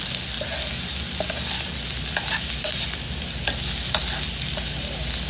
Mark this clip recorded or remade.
recorded